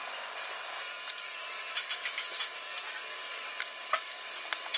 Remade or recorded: recorded